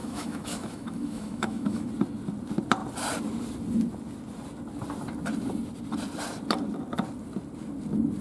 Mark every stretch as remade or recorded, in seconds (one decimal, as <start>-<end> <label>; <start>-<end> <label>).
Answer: 0.0-1.9 remade; 1.9-8.2 recorded